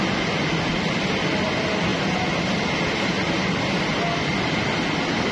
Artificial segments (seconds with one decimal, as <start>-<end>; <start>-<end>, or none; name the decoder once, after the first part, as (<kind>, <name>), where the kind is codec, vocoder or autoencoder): none